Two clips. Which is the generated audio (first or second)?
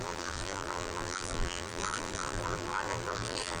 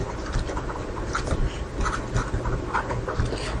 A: first